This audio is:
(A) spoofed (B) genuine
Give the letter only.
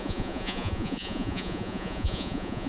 A